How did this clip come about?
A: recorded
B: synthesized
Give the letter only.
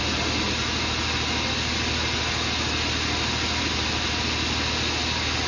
A